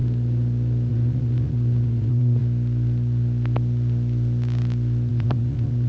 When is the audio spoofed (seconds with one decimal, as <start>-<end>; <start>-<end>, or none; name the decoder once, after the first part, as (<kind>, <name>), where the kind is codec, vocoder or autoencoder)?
0.9-2.4 (vocoder, Vocos); 5.1-5.9